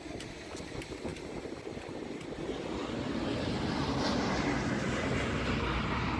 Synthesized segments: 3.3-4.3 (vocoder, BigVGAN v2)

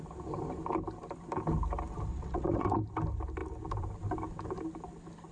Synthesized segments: 2.1-2.8 (vocoder, WaveNeXt)